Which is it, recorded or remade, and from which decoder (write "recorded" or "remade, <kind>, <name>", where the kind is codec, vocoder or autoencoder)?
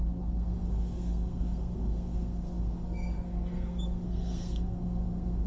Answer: remade, codec, SNAC